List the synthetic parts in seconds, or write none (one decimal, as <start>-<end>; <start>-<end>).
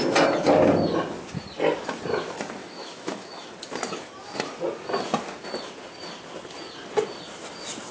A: 2.6-3.5